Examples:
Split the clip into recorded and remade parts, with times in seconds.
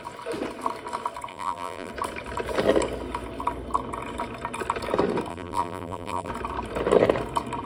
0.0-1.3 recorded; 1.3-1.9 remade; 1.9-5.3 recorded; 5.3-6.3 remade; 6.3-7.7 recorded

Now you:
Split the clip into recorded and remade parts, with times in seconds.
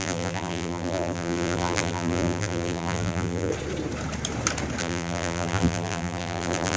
0.0-3.5 remade; 3.5-4.8 recorded; 4.8-6.8 remade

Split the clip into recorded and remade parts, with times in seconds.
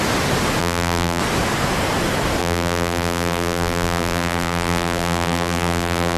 0.0-0.6 recorded; 0.6-1.2 remade; 1.2-2.4 recorded; 2.4-6.2 remade